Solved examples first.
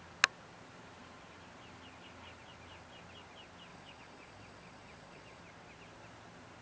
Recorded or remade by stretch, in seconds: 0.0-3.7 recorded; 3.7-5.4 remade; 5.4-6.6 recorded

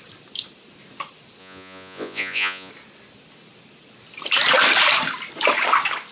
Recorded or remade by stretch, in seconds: 0.0-1.4 recorded; 1.4-2.7 remade; 2.7-6.1 recorded